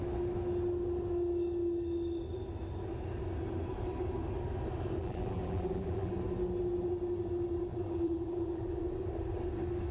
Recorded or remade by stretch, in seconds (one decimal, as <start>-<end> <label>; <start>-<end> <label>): 0.0-5.0 recorded; 5.0-6.1 remade; 6.1-7.7 recorded; 7.7-8.8 remade; 8.8-9.9 recorded